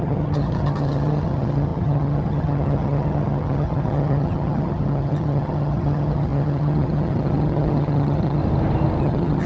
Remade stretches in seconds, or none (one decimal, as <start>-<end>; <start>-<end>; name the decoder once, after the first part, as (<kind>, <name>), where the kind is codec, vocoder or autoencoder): 0.0-8.4 (vocoder, HiFi-GAN); 9.0-9.5